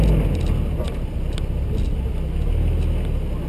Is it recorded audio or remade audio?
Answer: recorded